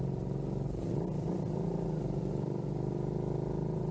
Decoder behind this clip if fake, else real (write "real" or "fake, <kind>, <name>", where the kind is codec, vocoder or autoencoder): real